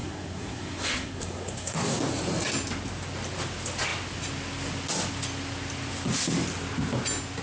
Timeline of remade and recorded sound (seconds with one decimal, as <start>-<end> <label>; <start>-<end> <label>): 0.0-2.0 remade; 2.0-7.4 recorded

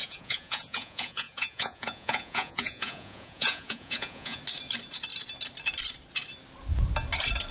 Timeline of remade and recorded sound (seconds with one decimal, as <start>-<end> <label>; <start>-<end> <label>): 0.0-4.4 remade; 4.4-7.5 recorded